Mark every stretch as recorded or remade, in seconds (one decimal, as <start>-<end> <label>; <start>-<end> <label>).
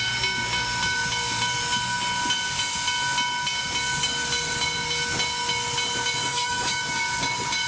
0.0-6.2 recorded; 6.2-7.0 remade; 7.0-7.7 recorded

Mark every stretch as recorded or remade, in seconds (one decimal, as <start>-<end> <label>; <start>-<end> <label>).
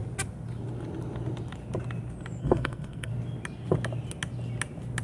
0.0-2.4 recorded; 2.4-3.1 remade; 3.1-5.0 recorded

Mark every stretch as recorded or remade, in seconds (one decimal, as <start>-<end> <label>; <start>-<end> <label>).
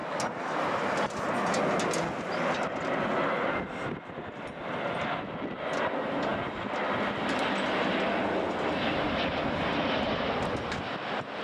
0.0-11.4 recorded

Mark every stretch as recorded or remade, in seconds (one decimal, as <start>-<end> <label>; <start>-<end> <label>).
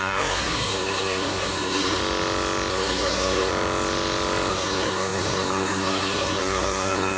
0.0-2.0 remade; 2.0-2.7 recorded; 2.7-3.5 remade; 3.5-4.5 recorded; 4.5-7.2 remade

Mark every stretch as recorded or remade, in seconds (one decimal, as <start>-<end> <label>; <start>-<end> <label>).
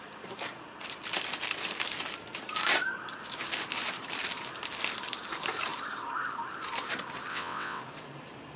0.0-7.3 recorded; 7.3-7.8 remade; 7.8-8.6 recorded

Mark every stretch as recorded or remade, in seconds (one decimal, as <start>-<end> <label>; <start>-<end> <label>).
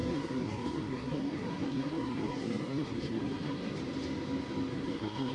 0.0-3.7 remade; 3.7-4.7 recorded; 4.7-5.3 remade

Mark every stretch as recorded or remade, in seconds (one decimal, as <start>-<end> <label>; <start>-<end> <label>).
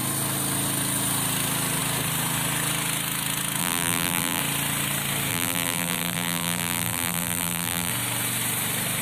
0.0-3.6 recorded; 3.6-4.4 remade; 4.4-5.3 recorded; 5.3-7.9 remade; 7.9-9.0 recorded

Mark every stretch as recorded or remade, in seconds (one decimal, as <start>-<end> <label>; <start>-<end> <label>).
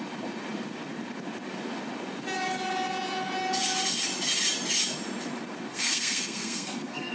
0.0-5.7 recorded; 5.7-7.1 remade